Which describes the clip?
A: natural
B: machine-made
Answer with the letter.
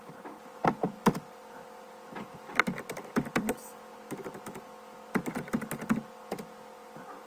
A